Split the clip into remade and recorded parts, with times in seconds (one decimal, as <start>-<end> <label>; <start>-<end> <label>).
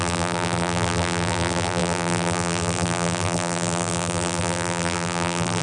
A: 0.0-5.6 remade